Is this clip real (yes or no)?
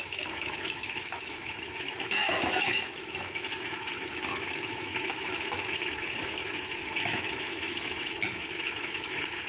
no